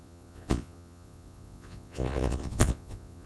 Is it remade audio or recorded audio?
remade